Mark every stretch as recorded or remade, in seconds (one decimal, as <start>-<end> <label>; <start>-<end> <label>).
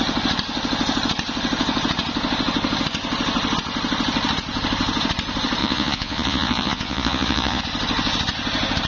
0.0-5.6 recorded; 5.6-7.6 remade; 7.6-8.9 recorded